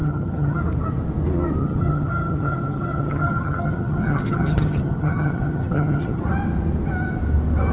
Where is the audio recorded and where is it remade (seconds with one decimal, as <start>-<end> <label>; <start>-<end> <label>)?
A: 0.0-0.6 remade; 0.6-1.6 recorded; 1.6-6.2 remade; 6.2-7.7 recorded